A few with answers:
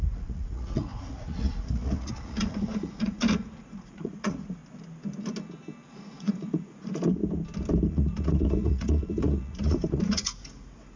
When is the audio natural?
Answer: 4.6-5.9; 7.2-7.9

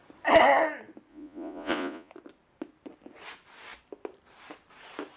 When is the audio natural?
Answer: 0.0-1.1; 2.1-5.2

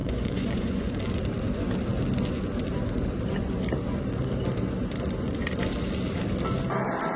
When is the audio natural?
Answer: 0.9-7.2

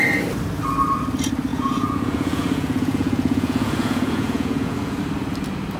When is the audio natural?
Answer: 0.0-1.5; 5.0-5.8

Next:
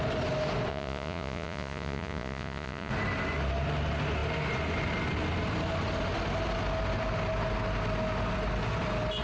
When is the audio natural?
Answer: 0.0-0.7; 2.9-9.2

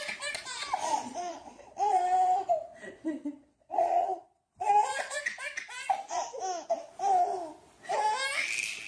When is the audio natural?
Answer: 0.0-0.8; 2.0-2.7; 5.2-8.9